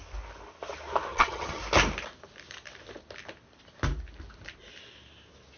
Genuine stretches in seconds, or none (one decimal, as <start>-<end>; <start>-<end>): 0.0-1.1; 1.6-5.6